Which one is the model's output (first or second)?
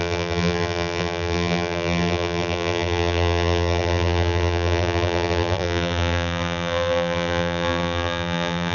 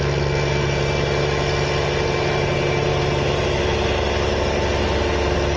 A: first